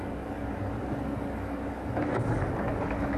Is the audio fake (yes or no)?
yes